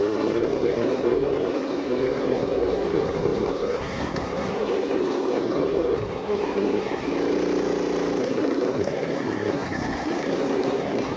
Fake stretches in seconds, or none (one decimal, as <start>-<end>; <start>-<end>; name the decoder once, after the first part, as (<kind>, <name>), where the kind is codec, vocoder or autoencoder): 0.0-7.1 (codec, SNAC); 8.2-11.2